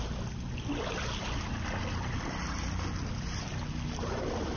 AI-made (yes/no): no